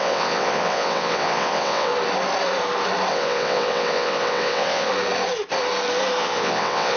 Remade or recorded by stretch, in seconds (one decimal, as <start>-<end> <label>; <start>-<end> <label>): 0.0-1.9 remade; 1.9-3.1 recorded; 3.1-4.9 remade; 4.9-6.2 recorded; 6.2-7.0 remade